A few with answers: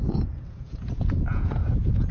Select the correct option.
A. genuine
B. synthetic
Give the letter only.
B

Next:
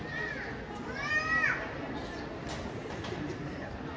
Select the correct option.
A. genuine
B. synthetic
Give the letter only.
A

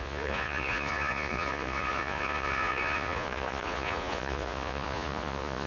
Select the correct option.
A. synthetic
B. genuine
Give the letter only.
A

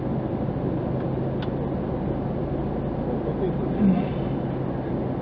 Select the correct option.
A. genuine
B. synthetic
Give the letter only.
A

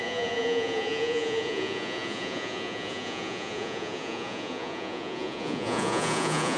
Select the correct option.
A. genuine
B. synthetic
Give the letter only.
B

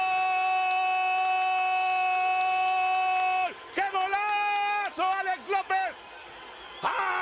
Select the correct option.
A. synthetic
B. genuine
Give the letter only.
B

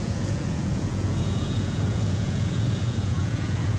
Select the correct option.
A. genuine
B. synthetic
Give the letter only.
B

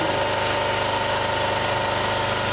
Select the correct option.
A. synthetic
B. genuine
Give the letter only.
B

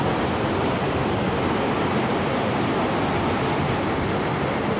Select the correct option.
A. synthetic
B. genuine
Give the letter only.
B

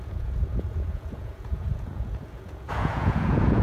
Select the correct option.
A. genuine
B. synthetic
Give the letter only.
B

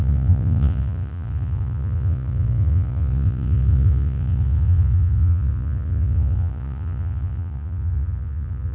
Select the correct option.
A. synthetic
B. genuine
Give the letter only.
A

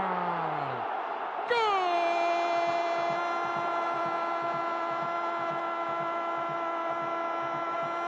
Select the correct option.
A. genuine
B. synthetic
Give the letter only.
A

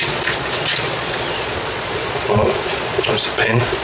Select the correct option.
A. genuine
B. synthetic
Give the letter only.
B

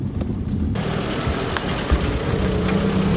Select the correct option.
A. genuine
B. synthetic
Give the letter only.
A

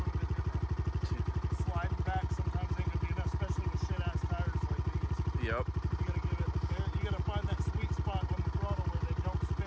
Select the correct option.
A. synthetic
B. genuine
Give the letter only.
B